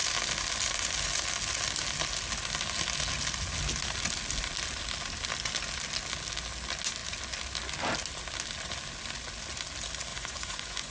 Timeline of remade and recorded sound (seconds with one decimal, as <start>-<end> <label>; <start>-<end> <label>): 0.0-10.1 recorded; 10.1-10.9 remade